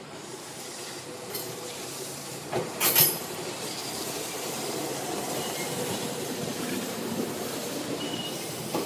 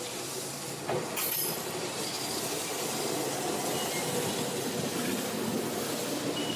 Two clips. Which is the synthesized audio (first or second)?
first